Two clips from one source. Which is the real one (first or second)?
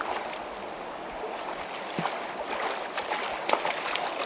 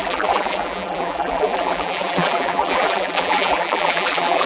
first